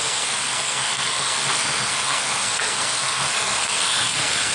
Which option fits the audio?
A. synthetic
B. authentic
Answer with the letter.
A